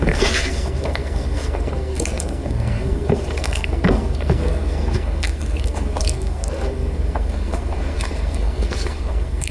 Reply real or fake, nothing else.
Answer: fake